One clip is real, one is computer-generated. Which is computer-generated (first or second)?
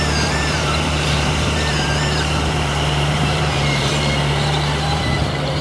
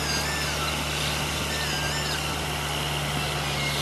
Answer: first